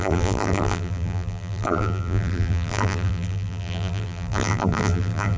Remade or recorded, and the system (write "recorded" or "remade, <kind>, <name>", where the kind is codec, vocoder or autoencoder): remade, vocoder, BigVGAN v2